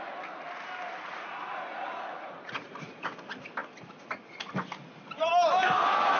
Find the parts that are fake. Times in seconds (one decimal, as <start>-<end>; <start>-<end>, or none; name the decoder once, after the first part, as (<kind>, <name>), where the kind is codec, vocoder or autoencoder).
0.9-2.9 (vocoder, Vocos)